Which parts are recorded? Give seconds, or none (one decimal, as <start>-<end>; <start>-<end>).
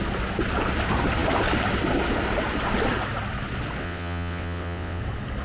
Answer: 0.0-3.8; 5.0-5.4